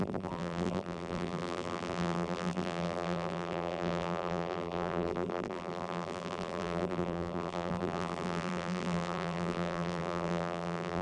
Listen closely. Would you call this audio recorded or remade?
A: remade